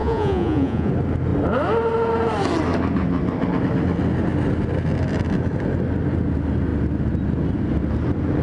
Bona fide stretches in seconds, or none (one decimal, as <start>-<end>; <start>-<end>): 0.9-8.4